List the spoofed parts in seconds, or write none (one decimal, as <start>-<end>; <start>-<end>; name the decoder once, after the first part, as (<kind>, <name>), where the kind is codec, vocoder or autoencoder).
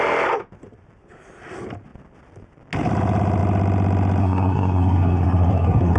4.2-6.0 (codec, SNAC)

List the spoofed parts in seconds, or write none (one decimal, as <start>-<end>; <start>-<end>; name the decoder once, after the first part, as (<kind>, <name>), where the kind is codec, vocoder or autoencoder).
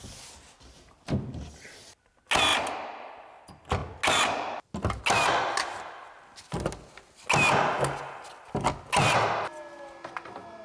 none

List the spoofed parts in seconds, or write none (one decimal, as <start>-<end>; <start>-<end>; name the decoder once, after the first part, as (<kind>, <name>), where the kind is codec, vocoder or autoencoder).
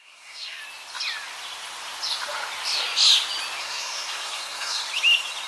0.0-0.6 (codec, SNAC); 3.6-4.8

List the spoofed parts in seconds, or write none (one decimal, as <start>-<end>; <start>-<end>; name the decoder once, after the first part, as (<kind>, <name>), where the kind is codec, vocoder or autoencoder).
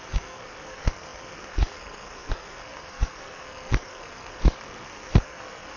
0.0-5.8 (codec, SNAC)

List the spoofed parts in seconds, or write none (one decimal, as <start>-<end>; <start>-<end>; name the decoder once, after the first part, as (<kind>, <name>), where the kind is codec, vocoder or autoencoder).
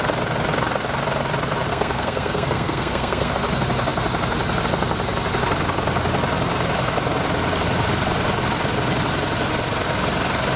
1.7-3.3 (codec, SNAC)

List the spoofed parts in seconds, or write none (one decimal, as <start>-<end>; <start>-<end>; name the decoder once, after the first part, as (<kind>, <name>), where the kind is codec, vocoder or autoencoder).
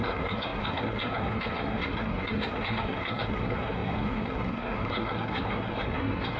0.0-6.4 (codec, SNAC)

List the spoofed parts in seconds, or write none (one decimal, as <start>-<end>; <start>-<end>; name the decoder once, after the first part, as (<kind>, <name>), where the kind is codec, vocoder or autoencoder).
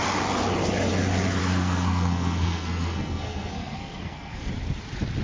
1.4-4.5 (codec, SNAC)